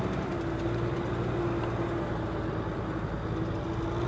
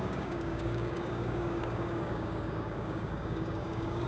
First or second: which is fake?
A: second